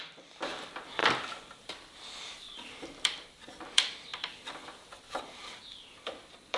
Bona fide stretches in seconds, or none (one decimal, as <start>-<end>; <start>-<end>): 1.0-1.6